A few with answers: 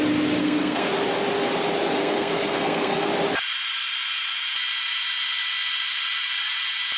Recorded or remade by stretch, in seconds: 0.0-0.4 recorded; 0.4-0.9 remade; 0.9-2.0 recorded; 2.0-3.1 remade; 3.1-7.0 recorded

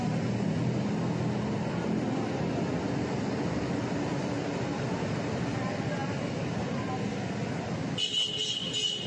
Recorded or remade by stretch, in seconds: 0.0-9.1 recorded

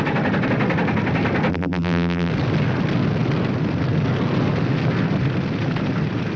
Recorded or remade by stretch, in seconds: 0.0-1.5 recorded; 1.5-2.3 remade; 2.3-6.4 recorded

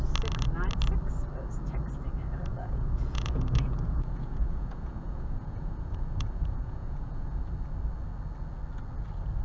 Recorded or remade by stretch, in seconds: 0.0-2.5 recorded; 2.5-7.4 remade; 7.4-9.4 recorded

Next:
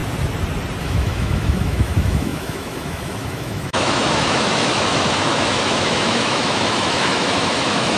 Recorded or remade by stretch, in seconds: 0.0-0.8 recorded; 0.8-8.0 remade